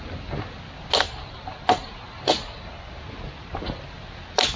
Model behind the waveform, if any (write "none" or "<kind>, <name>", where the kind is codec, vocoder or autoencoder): none